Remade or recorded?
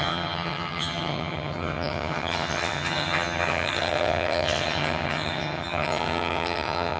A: remade